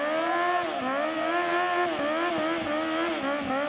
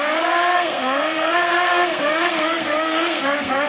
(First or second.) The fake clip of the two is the second